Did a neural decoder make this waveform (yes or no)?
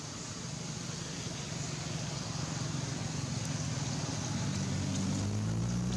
no